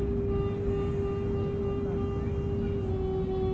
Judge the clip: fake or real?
real